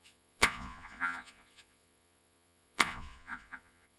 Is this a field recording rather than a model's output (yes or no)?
no